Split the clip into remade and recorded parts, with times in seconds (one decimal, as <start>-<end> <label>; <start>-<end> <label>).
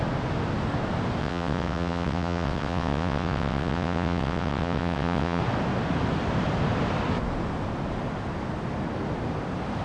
0.0-1.2 recorded; 1.2-5.4 remade; 5.4-9.8 recorded